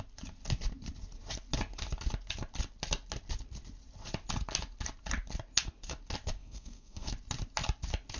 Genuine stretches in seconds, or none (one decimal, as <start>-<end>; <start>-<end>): 0.0-6.4; 7.1-8.2